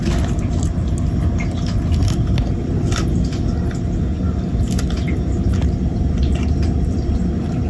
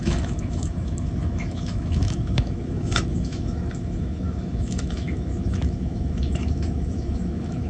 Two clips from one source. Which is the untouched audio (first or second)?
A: first